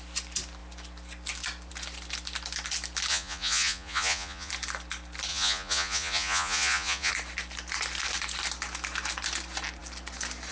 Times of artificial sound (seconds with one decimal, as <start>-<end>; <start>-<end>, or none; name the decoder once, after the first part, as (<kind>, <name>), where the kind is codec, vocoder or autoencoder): 3.1-4.5 (vocoder, Vocos); 5.3-7.1